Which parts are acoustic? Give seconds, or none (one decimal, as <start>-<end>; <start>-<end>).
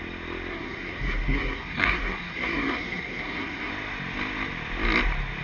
0.0-0.5; 3.7-5.4